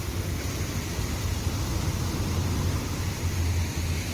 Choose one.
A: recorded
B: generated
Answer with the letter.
A